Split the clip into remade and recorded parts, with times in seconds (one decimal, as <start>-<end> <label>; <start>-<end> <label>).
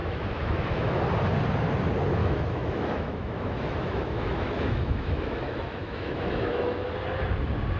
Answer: 0.0-1.0 remade; 1.0-2.2 recorded; 2.2-6.8 remade; 6.8-7.8 recorded